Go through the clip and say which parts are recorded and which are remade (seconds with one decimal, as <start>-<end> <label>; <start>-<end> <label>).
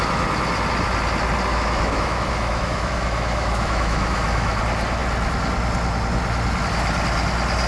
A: 0.0-1.5 recorded; 1.5-4.6 remade; 4.6-7.7 recorded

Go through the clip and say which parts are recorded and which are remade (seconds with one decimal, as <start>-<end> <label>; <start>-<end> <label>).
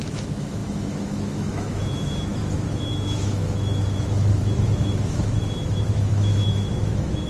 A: 0.0-7.3 remade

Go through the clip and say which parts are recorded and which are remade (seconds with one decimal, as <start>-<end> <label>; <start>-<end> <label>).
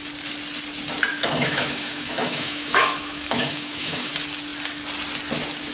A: 0.0-1.1 recorded; 1.1-4.1 remade; 4.1-5.7 recorded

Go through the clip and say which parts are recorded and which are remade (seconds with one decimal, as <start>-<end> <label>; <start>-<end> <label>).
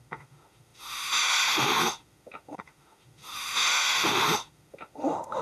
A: 0.0-5.4 remade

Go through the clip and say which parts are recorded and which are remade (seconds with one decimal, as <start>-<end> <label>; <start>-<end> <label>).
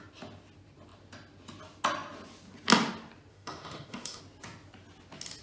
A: 0.0-3.3 recorded; 3.3-4.2 remade; 4.2-5.4 recorded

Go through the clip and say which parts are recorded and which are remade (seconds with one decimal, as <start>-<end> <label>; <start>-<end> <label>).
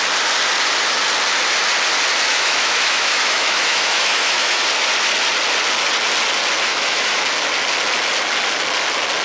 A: 0.0-2.3 recorded; 2.3-4.6 remade; 4.6-6.7 recorded; 6.7-7.2 remade; 7.2-9.2 recorded